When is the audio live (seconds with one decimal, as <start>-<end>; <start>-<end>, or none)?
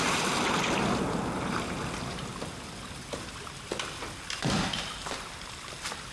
0.0-6.1